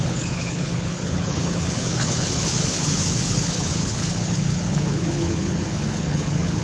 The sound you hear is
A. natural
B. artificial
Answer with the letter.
B